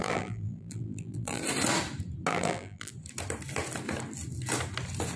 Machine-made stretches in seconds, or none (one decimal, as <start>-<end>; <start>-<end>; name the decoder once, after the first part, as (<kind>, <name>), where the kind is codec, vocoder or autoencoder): 0.0-1.4 (vocoder, BigVGAN v2); 2.3-2.9